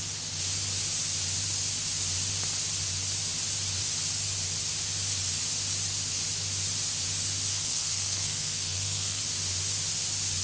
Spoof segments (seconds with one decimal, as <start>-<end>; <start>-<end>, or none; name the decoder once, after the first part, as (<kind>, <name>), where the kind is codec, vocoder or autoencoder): 7.5-9.2 (codec, SNAC)